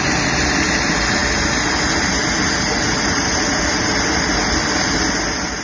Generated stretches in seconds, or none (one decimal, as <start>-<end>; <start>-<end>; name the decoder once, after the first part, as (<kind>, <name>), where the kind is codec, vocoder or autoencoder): none